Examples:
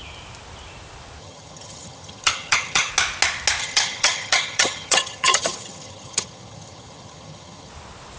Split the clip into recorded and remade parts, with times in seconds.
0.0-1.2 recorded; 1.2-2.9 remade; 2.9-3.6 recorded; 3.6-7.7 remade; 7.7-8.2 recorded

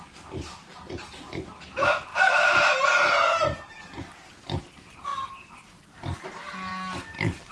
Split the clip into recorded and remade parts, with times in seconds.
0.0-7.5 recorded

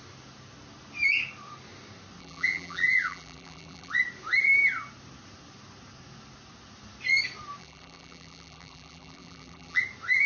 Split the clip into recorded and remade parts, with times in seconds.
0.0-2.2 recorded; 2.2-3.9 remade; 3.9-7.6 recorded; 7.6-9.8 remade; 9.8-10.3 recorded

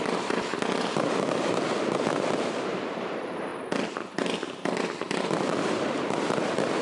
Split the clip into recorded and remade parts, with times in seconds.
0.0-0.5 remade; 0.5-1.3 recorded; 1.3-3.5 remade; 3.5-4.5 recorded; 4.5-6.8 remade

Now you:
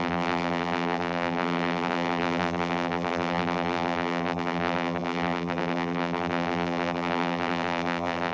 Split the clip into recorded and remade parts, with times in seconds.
0.0-8.3 remade

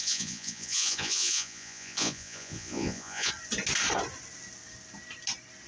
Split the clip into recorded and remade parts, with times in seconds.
0.0-3.3 remade; 3.3-5.7 recorded

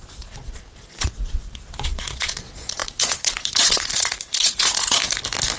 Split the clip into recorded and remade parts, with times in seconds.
0.0-5.0 remade; 5.0-5.6 recorded